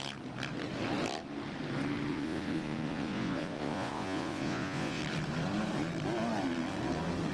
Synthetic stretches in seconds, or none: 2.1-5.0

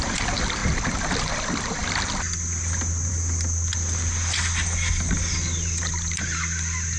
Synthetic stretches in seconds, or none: none

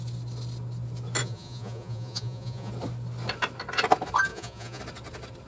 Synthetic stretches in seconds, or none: 1.2-2.7; 4.3-4.8

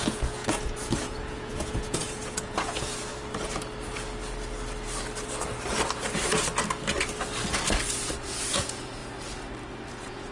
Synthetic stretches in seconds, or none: 0.0-3.1; 8.3-9.0; 9.9-10.3

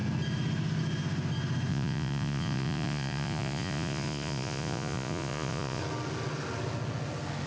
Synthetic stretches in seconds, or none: 1.7-5.8

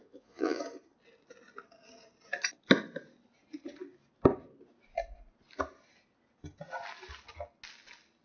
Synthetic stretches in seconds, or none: 0.0-0.6